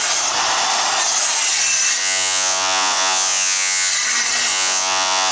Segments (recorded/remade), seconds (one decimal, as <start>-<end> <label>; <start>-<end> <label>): 0.0-2.0 recorded; 2.0-3.9 remade; 3.9-4.5 recorded; 4.5-5.3 remade